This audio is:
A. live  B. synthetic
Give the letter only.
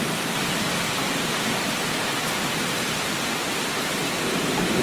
A